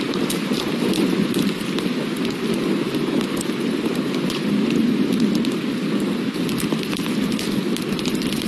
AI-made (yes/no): no